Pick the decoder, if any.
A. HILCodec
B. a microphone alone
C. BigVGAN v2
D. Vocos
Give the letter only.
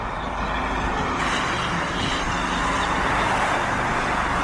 B